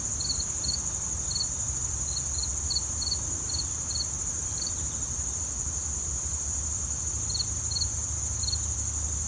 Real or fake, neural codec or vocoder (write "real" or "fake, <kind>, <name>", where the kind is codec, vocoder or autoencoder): real